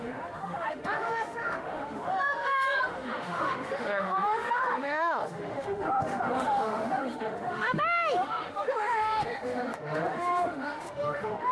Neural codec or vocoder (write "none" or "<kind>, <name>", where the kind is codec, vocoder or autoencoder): autoencoder, DAC-VAE